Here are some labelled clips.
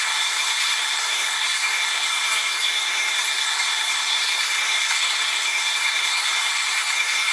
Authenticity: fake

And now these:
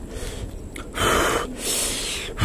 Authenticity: real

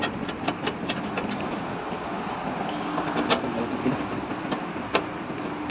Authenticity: real